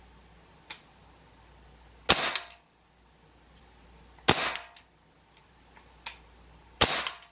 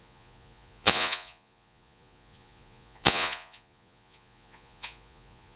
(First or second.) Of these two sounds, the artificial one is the second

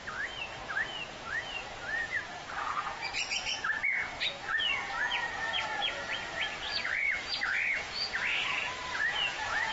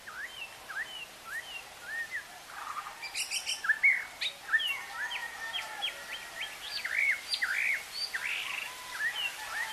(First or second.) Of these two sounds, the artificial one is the first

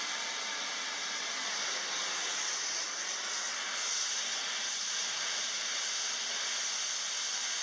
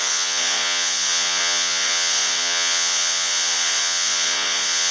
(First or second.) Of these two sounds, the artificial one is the second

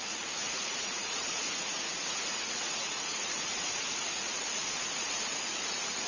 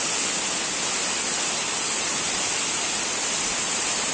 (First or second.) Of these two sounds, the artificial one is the first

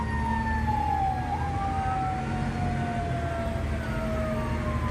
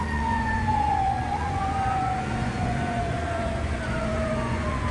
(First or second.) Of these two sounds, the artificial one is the second